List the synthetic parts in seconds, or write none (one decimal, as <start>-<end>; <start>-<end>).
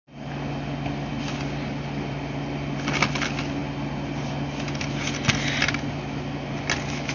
none